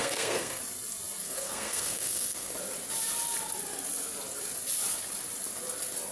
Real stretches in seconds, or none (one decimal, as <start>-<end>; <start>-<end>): 0.6-1.2; 2.5-6.1